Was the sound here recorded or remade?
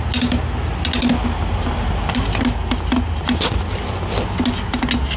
recorded